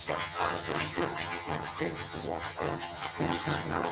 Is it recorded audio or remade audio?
remade